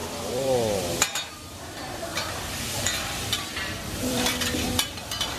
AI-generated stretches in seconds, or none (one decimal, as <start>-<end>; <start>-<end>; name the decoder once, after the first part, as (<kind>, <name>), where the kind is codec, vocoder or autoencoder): 0.0-1.3 (vocoder, BigVGAN v2); 2.1-5.4